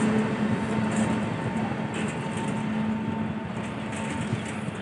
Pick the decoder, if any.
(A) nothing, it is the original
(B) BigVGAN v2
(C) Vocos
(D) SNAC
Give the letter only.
A